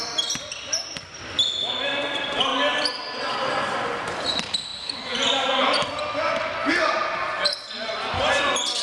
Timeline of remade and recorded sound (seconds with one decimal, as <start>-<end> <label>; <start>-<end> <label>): 0.0-8.8 recorded